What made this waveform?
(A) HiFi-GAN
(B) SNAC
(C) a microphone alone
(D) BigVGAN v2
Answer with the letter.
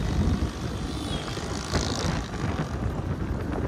C